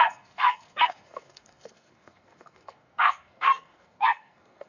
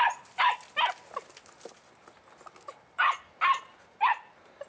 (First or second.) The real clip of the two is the second